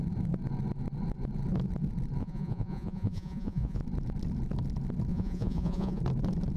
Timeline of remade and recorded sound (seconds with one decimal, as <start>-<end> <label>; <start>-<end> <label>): 0.0-2.2 recorded; 2.2-3.8 remade; 3.8-5.1 recorded; 5.1-6.0 remade; 6.0-6.6 recorded